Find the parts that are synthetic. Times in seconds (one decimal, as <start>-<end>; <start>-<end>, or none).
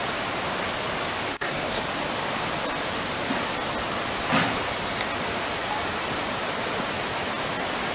1.3-1.8